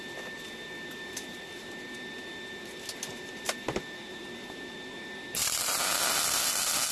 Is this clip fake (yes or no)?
no